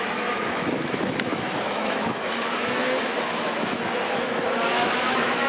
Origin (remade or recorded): remade